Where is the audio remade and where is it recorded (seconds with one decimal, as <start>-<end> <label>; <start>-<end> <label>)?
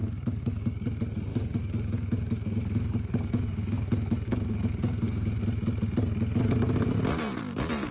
0.0-0.9 remade; 0.9-1.3 recorded; 1.3-5.4 remade; 5.4-7.9 recorded